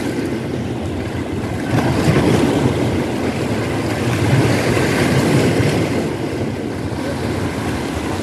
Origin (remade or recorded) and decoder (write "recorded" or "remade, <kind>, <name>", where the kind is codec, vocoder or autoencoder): recorded